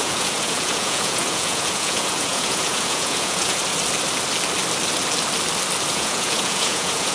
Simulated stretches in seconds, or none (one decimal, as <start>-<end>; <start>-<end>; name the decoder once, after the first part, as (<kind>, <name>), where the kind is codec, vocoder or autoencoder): 0.0-3.6 (vocoder, Vocos); 5.9-7.1

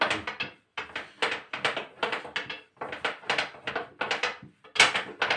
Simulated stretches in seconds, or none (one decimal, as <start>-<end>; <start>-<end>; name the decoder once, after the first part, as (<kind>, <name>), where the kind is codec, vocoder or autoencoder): none

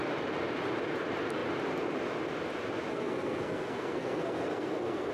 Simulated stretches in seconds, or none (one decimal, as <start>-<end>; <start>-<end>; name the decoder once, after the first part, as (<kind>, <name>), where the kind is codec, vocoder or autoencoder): 2.9-5.1 (codec, SNAC)

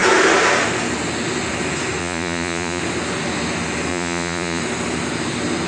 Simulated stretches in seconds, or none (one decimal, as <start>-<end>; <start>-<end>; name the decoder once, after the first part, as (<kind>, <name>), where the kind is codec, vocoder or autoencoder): 2.0-2.8 (vocoder, Vocos); 3.9-4.6

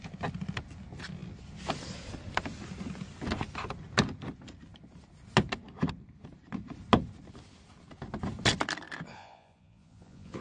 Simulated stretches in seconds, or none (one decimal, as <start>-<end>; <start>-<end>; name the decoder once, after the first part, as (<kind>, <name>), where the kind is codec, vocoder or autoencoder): 9.1-10.4 (vocoder, Vocos)

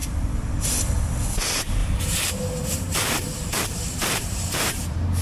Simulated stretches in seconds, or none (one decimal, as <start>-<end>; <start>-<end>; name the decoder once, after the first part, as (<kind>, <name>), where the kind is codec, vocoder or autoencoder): 1.8-2.3 (vocoder, BigVGAN v2); 2.7-5.2

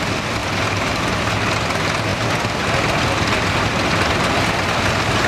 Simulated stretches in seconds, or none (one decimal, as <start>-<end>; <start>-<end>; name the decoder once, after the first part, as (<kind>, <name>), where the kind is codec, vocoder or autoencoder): 0.4-1.0 (vocoder, BigVGAN v2)

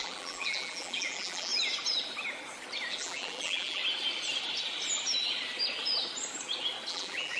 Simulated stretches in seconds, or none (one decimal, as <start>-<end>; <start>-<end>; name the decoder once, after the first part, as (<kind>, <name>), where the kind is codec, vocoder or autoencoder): 0.0-1.5 (vocoder, BigVGAN v2); 2.9-3.8; 6.9-7.4